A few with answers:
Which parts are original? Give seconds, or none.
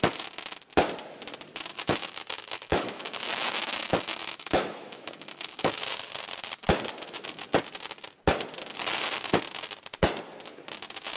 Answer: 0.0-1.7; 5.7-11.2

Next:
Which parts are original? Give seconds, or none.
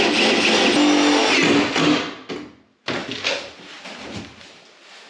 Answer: 0.0-1.2; 2.3-3.0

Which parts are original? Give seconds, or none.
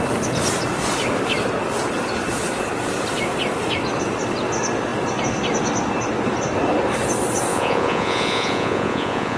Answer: 0.0-7.5